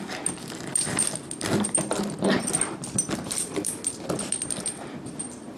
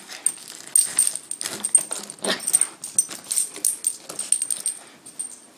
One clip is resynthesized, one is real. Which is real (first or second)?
second